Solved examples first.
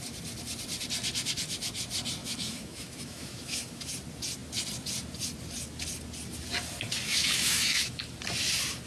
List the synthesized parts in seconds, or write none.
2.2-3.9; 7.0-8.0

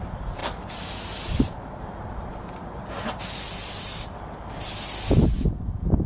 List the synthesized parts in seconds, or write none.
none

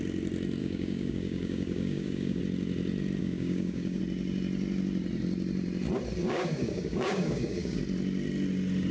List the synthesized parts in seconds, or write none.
0.6-2.4; 3.2-4.0; 6.2-7.8

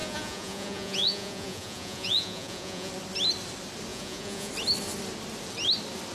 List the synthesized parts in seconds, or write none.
0.0-2.9; 3.9-4.5

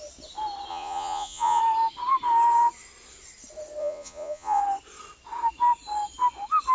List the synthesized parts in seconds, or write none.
0.7-1.6; 3.8-4.6

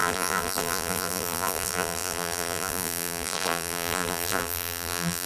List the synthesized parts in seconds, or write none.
0.0-5.3

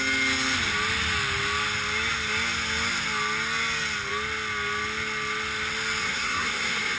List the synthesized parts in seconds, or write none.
6.0-7.0

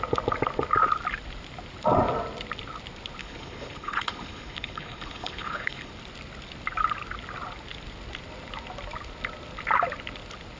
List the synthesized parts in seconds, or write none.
3.2-5.9